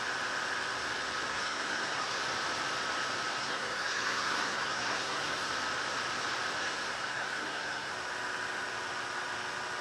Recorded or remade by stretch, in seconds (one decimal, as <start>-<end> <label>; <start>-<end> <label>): 0.0-1.3 recorded; 1.3-2.2 remade; 2.2-3.4 recorded; 3.4-5.5 remade; 5.5-6.6 recorded; 6.6-7.9 remade; 7.9-9.8 recorded